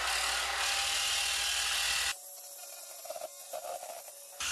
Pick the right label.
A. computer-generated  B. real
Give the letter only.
B